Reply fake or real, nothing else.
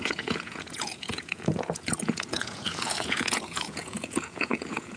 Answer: fake